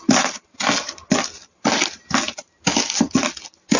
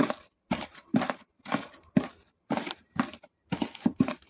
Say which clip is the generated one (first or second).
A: second